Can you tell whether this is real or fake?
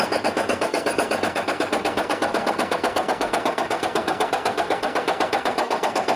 fake